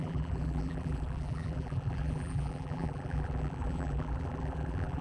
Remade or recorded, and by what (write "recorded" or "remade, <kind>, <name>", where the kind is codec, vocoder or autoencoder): remade, vocoder, BigVGAN v2